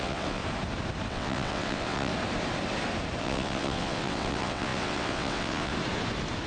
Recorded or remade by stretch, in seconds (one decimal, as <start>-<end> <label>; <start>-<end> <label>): 0.0-0.4 remade; 0.4-1.1 recorded; 1.1-2.1 remade; 2.1-3.2 recorded; 3.2-5.7 remade; 5.7-6.5 recorded